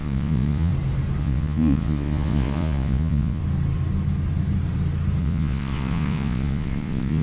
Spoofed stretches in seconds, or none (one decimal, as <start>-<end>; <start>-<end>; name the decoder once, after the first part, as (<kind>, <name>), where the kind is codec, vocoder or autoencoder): 0.0-0.7 (vocoder, Vocos); 1.2-3.4; 5.2-7.2